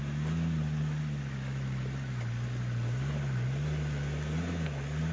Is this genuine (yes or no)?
yes